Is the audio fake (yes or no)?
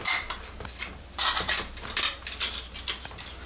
no